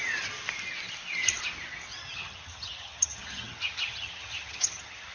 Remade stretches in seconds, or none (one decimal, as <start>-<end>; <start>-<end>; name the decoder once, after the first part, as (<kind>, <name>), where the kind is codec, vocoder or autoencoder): 1.9-5.1 (vocoder, HiFi-GAN)